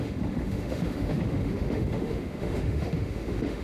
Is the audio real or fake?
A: fake